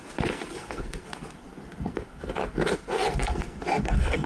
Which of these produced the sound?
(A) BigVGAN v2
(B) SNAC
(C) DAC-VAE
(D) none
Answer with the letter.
B